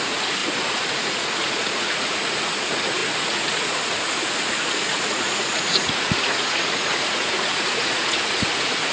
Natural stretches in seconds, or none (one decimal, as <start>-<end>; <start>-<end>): none